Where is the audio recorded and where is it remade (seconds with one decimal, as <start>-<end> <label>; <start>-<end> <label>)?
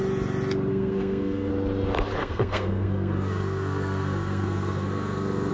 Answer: 0.0-0.7 recorded; 0.7-1.5 remade; 1.5-2.2 recorded; 2.2-5.5 remade